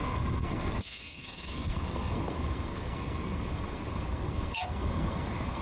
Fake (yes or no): yes